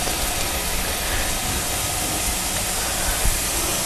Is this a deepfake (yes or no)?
no